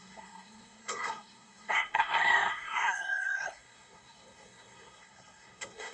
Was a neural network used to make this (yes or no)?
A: yes